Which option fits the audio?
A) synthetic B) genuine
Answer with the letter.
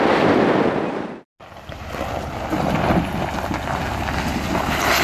B